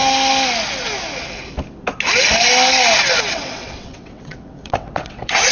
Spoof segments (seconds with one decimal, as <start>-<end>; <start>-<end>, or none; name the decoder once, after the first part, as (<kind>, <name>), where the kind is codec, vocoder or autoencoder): 3.3-5.5 (vocoder, WaveNeXt)